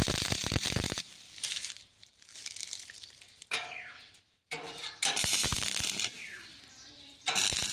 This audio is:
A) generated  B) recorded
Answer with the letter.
A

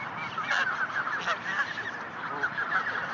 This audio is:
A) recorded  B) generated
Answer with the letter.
A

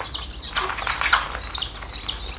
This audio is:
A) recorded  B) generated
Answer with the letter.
A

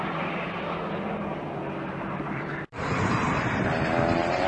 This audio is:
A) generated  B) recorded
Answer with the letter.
A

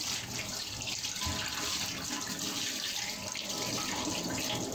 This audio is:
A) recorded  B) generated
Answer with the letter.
A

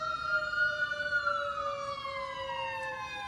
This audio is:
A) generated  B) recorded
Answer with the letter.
B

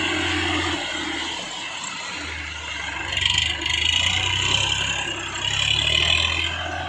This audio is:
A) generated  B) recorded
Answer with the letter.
B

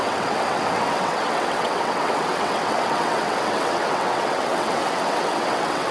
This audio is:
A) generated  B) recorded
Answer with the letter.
A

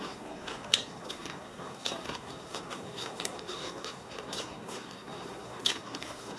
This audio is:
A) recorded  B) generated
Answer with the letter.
B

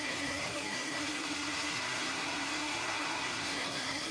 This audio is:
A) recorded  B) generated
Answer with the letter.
B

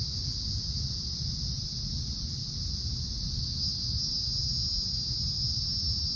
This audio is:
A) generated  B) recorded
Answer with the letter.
B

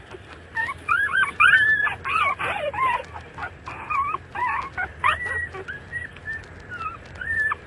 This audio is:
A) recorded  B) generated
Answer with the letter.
A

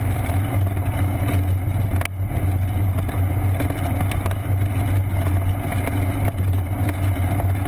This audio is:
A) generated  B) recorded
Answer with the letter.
B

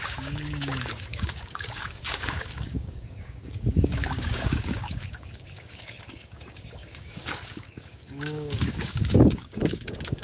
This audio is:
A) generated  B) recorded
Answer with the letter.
A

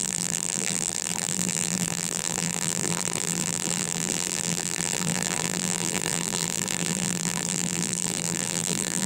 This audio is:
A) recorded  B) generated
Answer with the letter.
B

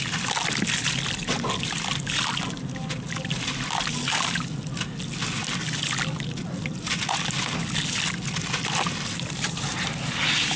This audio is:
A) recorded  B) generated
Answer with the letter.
A